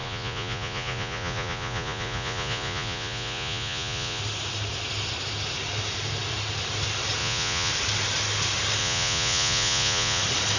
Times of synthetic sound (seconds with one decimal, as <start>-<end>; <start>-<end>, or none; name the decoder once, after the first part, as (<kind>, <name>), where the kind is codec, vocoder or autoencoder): 0.0-4.2 (vocoder, Vocos); 7.2-7.7; 8.8-10.2